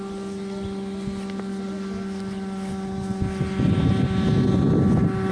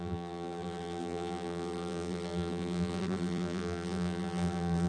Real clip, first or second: first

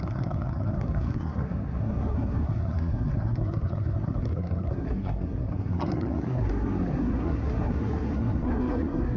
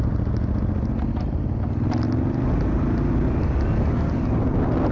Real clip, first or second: second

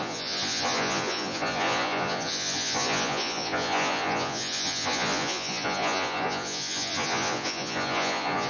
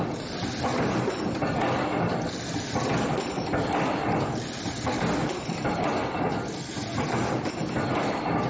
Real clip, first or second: second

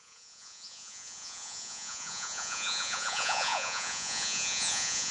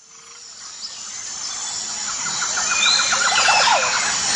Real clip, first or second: second